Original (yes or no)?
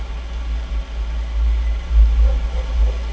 yes